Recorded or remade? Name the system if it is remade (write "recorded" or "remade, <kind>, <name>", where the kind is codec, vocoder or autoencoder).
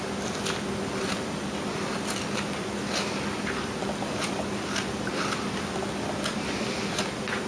recorded